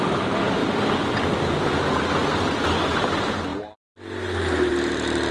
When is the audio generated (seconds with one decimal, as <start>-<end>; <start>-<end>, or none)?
0.6-1.2; 2.2-3.1